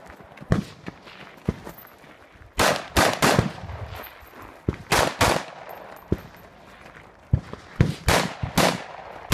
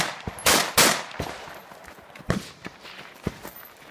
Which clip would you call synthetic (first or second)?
second